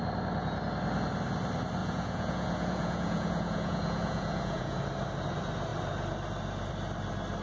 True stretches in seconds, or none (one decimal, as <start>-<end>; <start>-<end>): 0.0-1.8; 4.8-7.4